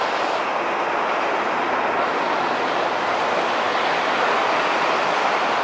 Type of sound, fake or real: real